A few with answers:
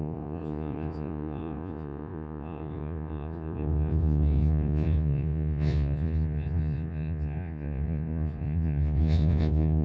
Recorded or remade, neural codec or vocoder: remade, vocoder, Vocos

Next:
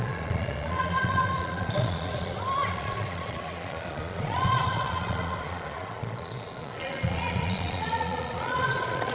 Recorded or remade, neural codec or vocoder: remade, vocoder, Vocos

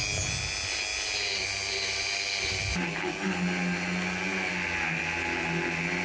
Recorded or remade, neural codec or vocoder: recorded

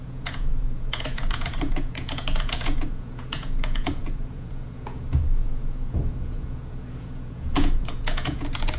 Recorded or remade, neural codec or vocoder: remade, vocoder, Vocos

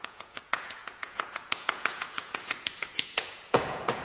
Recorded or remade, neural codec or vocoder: remade, vocoder, Vocos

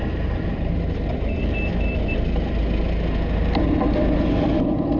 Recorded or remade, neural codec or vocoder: recorded